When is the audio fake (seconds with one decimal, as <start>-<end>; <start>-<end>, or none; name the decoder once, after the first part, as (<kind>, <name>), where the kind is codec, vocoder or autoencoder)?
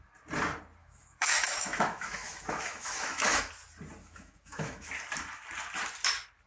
0.8-3.5 (autoencoder, DAC-VAE); 4.0-4.9